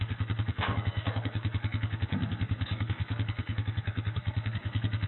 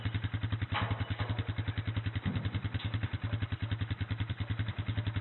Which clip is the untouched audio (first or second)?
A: second